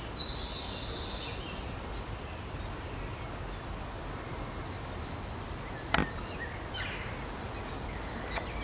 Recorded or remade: recorded